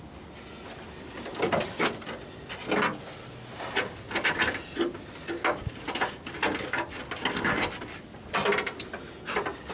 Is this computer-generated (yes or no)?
no